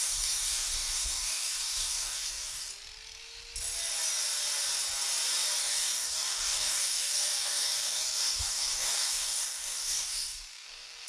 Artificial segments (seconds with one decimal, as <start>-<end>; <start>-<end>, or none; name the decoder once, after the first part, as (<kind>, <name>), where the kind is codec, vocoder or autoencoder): 0.0-2.7 (codec, DAC); 5.6-11.1